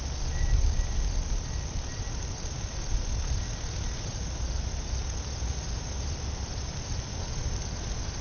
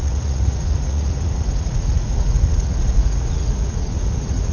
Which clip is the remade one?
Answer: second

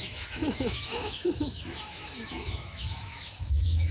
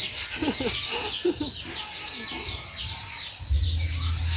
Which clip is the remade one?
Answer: first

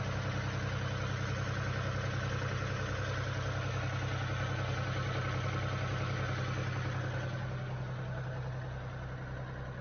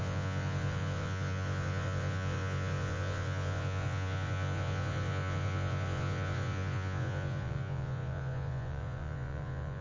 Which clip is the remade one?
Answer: second